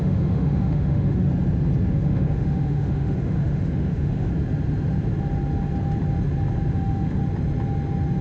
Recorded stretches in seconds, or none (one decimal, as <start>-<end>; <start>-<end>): 1.3-1.9; 4.3-6.7; 7.2-8.2